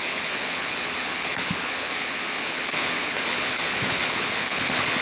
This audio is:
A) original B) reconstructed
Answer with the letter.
B